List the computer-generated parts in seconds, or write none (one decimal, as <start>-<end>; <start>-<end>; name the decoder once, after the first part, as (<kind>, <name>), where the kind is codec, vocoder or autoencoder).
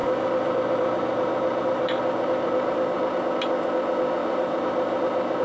0.0-3.2 (vocoder, BigVGAN v2); 4.2-5.4